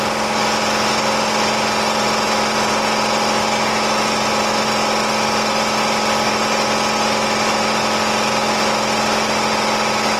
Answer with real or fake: real